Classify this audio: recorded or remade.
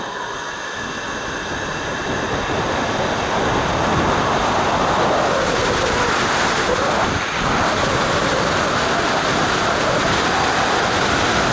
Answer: recorded